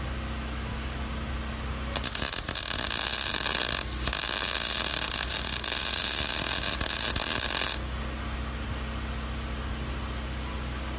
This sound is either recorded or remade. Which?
recorded